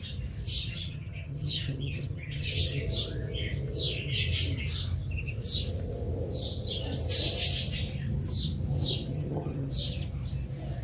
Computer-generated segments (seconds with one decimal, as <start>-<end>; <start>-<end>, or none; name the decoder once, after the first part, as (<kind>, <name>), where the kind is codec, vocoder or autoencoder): 0.6-2.8 (vocoder, HiFi-GAN); 9.1-9.7